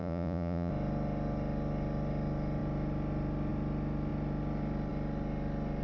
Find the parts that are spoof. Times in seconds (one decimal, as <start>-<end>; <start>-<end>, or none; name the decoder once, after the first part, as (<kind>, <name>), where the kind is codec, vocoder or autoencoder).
0.0-0.7 (vocoder, Vocos)